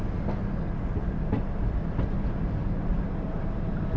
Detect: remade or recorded recorded